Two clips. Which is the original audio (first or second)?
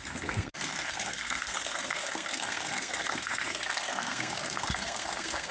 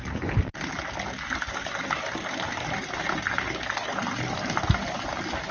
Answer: second